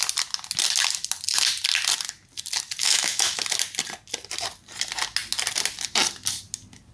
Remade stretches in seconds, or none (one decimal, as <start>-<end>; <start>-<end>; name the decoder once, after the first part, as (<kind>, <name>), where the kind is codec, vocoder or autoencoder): 2.8-3.4 (autoencoder, DAC-VAE)